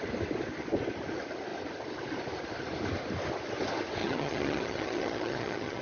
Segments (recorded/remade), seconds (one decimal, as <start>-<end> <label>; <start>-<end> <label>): 0.0-4.0 recorded; 4.0-5.8 remade